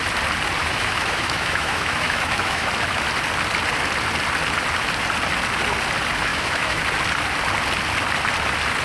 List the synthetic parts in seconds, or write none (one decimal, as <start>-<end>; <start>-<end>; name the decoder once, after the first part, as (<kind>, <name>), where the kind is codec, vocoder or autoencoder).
0.6-2.7 (autoencoder, DAC-VAE); 6.3-6.8